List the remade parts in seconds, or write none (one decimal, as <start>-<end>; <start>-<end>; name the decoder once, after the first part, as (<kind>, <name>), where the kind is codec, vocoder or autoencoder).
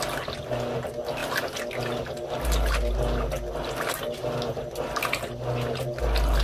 none